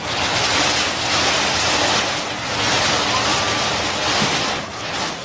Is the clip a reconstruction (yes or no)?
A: no